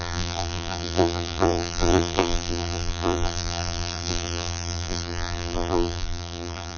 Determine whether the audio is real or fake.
fake